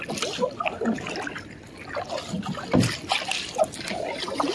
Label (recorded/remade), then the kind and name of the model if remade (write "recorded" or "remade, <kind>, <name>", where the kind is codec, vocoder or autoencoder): recorded